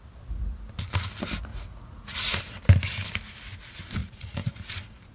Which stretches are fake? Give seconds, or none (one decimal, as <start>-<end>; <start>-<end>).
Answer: 1.5-2.4; 4.0-4.5